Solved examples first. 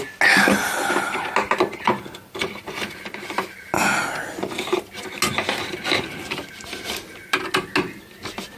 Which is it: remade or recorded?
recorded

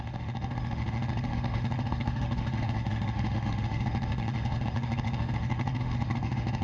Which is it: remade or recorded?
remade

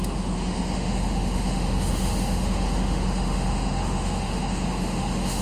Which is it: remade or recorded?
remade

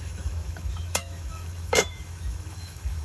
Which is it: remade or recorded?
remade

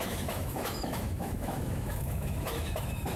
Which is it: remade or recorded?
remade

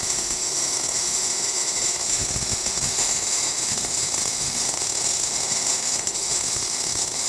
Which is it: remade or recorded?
remade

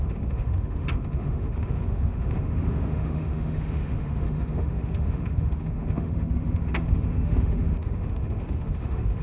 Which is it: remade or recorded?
remade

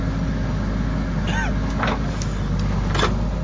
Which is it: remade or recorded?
recorded